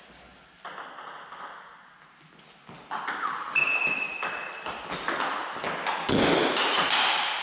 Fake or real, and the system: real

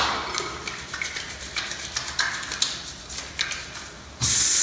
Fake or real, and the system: real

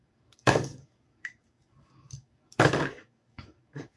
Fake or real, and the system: fake, codec, DAC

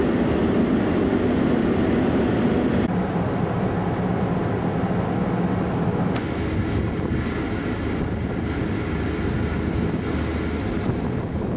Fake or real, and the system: real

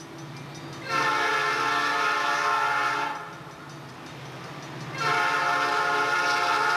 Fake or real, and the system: real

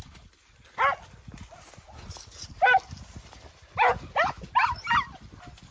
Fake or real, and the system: real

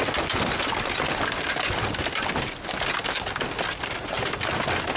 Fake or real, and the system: real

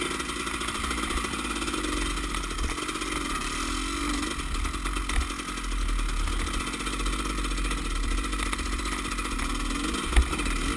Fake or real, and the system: real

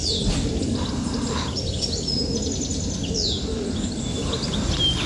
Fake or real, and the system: real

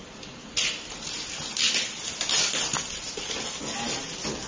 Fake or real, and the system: real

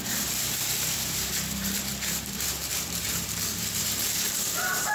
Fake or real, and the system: fake, vocoder, BigVGAN v2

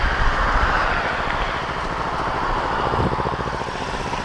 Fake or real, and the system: real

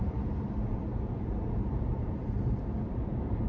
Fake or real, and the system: fake, vocoder, BigVGAN v2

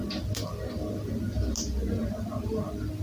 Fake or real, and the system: real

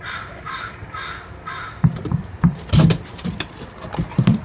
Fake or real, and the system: real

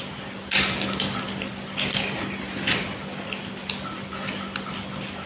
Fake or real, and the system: real